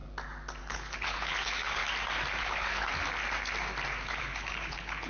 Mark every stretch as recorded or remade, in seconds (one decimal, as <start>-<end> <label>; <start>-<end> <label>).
0.0-0.6 recorded; 0.6-1.8 remade; 1.8-2.4 recorded; 2.4-2.9 remade; 2.9-4.2 recorded; 4.2-5.1 remade